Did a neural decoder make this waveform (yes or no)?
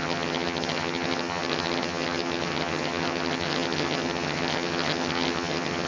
yes